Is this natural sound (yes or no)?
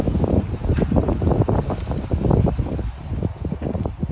yes